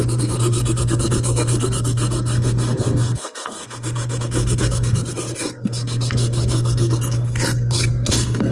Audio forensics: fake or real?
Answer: fake